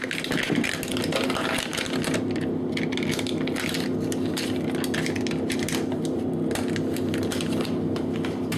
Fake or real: real